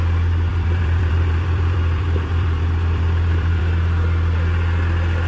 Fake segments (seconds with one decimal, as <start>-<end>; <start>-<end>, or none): 0.5-3.6